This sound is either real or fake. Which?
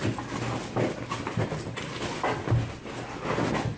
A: real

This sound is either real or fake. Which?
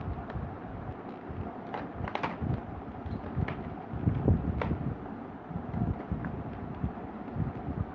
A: real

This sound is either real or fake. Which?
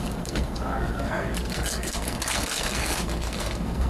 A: fake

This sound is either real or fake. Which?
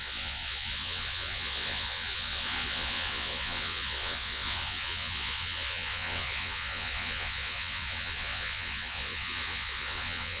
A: fake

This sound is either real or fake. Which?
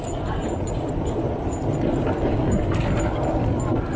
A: real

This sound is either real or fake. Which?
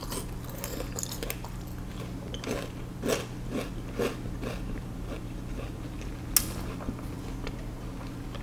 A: real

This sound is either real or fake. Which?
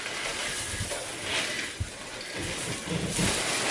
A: real